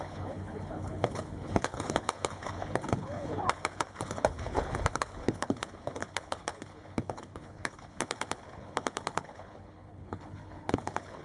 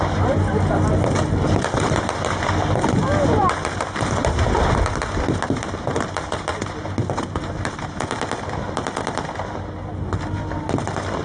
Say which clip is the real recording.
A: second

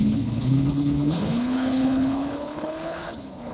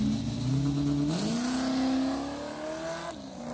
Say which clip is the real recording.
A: second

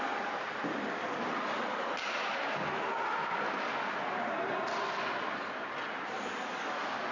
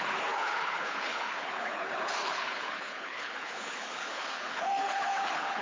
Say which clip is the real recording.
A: first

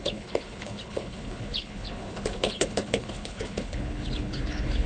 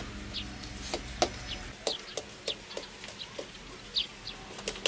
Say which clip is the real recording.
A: second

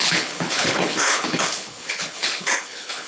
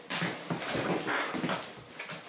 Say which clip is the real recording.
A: second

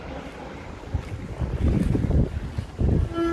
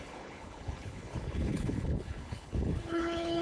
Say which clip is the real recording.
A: first